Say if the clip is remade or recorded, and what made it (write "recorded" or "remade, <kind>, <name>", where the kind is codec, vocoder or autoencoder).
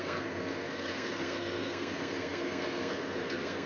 remade, codec, SNAC